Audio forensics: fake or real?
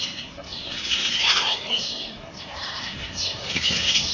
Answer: fake